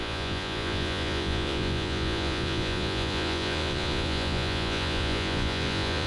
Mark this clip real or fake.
fake